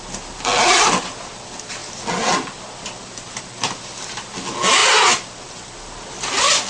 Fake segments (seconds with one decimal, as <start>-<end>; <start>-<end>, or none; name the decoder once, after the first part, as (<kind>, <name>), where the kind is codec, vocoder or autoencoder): none